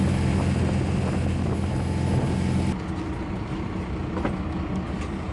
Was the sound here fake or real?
real